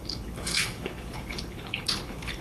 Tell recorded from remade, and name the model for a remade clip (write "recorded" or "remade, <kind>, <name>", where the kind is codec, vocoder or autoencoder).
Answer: remade, codec, HILCodec